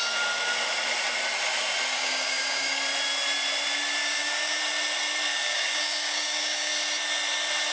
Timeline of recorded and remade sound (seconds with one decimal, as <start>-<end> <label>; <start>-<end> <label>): 0.0-1.9 recorded; 1.9-2.8 remade; 2.8-4.0 recorded; 4.0-4.6 remade; 4.6-5.3 recorded; 5.3-6.7 remade; 6.7-7.7 recorded